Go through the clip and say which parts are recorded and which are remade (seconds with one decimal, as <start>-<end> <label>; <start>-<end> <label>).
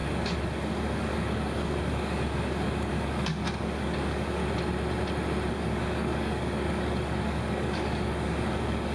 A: 0.0-4.4 remade; 4.4-5.5 recorded; 5.5-8.9 remade